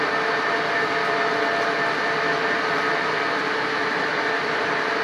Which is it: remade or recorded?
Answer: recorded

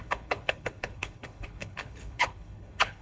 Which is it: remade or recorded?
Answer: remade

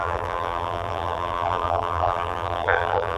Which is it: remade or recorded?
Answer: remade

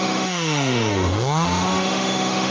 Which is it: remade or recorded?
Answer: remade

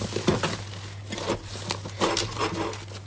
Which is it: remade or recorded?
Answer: recorded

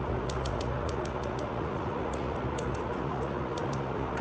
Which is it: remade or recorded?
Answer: remade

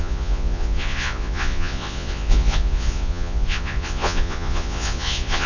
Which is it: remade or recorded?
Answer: remade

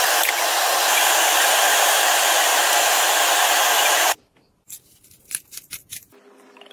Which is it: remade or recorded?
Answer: recorded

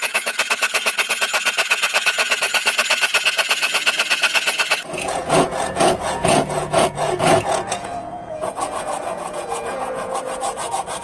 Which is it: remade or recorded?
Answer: remade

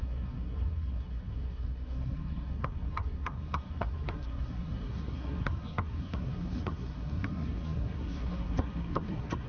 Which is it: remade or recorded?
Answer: remade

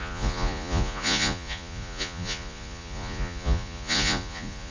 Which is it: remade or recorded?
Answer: remade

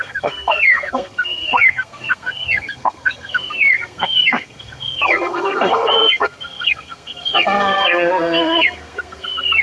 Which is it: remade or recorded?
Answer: remade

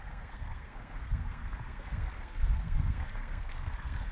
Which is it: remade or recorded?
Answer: remade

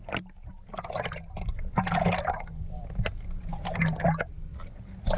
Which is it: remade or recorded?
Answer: recorded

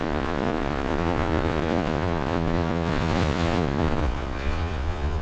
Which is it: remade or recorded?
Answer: remade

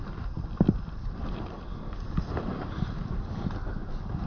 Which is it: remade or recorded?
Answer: recorded